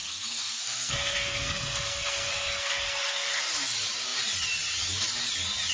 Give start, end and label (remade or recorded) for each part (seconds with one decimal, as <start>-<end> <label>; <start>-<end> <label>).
0.0-3.4 remade; 3.4-5.7 recorded